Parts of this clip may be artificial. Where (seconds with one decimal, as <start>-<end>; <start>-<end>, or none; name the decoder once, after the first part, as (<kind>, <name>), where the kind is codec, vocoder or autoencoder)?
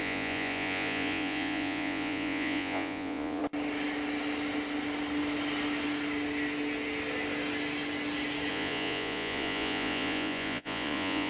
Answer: 0.0-3.4 (vocoder, Vocos); 8.5-11.3